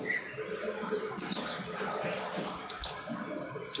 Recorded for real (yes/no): yes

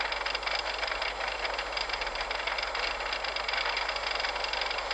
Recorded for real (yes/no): yes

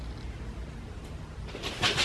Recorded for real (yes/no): yes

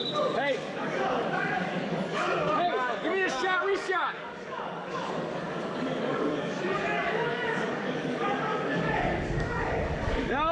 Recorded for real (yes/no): no